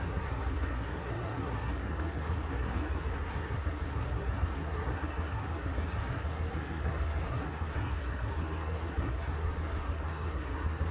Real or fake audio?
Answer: fake